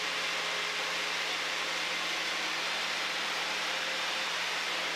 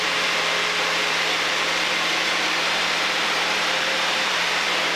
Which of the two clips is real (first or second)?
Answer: first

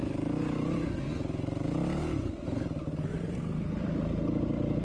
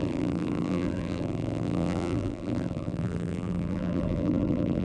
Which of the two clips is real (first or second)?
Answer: first